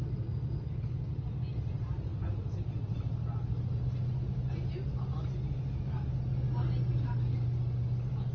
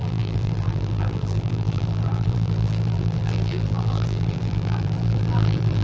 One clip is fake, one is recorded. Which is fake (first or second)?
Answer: second